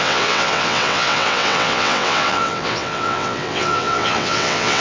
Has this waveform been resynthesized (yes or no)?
yes